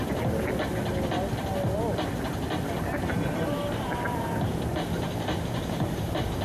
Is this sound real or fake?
real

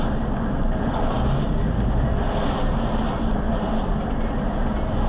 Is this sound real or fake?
real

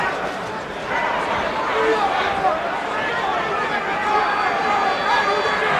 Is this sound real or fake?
real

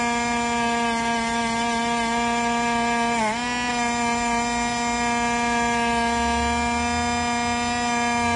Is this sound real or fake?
real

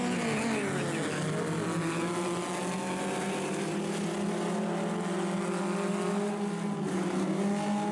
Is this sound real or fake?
real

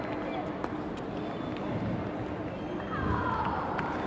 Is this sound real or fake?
real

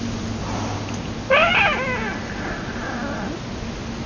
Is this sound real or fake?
real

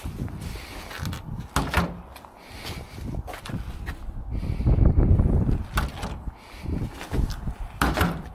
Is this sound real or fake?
real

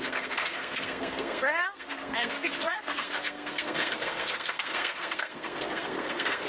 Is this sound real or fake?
fake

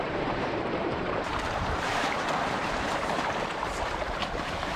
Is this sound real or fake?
fake